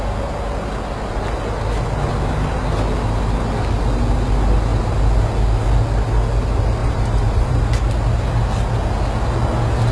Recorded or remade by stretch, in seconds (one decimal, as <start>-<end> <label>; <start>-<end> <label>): 0.0-6.8 recorded; 6.8-7.6 remade; 7.6-9.9 recorded